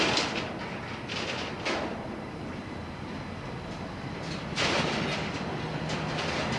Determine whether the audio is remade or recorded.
recorded